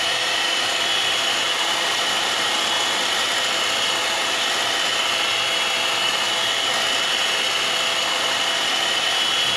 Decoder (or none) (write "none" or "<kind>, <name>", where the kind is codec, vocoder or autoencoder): none